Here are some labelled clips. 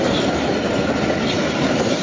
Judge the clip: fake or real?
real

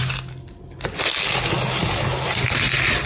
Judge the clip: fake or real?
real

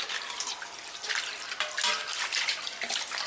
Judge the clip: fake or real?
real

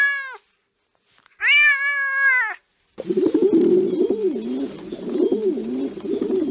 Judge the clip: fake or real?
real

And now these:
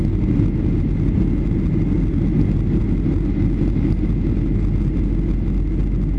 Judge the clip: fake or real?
real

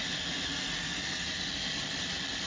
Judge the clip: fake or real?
real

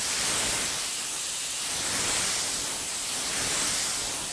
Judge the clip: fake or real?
fake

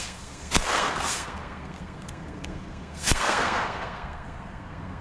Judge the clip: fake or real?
fake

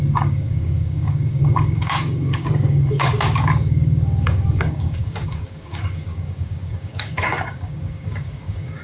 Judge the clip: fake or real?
fake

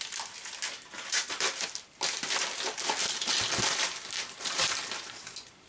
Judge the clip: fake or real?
real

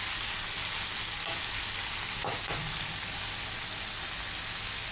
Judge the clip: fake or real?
real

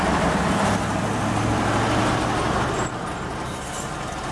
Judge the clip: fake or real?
real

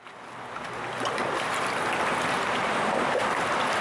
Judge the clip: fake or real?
real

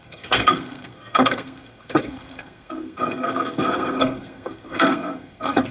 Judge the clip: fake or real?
fake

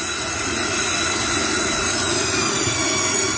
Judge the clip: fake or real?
fake